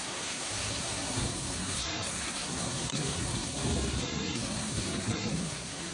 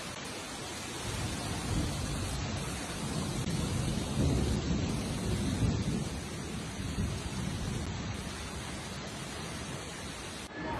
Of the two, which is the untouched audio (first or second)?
second